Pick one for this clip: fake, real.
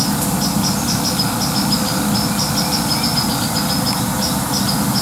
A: real